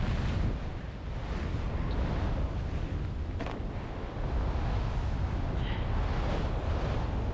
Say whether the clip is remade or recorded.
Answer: recorded